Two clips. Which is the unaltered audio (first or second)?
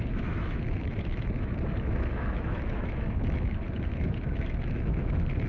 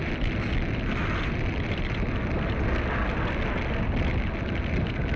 second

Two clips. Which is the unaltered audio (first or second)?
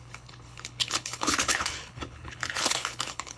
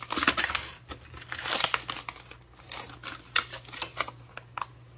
second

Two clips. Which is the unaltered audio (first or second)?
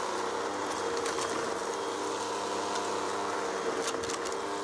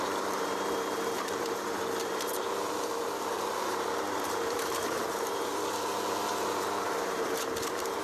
first